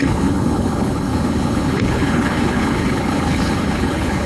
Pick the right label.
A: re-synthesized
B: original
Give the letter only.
A